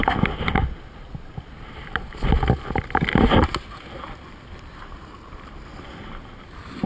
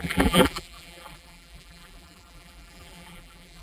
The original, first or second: first